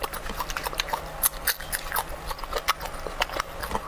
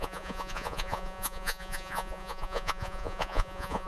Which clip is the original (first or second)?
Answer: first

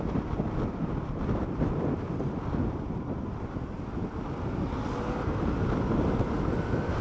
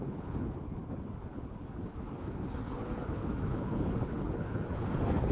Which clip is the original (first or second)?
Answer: first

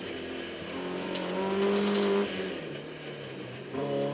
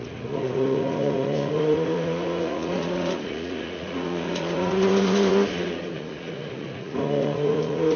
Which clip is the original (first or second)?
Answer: first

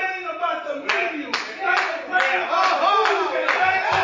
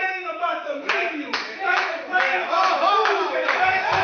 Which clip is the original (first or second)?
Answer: first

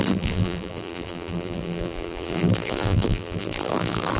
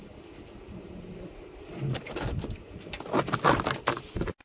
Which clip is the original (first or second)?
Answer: second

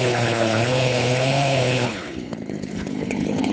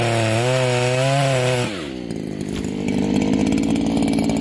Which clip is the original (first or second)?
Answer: second